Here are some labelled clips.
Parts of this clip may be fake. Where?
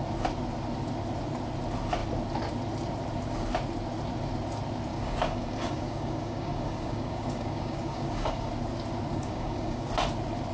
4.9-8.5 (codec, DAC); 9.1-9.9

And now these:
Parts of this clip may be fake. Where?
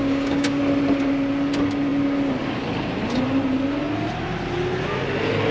0.0-0.6 (codec, DAC)